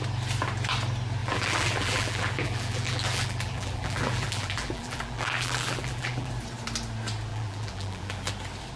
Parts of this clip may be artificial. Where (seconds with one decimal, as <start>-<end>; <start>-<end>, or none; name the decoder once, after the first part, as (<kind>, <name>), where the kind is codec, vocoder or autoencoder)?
1.2-6.3 (vocoder, BigVGAN v2); 7.3-8.3